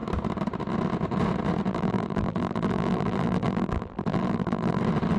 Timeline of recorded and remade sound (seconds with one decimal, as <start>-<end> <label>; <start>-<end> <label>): 0.0-1.7 recorded; 1.7-4.8 remade; 4.8-5.2 recorded